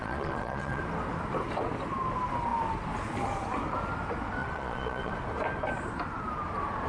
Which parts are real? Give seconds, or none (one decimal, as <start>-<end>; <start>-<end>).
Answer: 0.8-4.4; 5.1-6.9